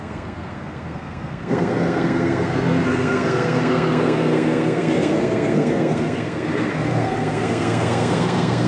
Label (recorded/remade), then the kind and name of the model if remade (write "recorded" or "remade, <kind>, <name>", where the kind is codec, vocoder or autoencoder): remade, codec, SNAC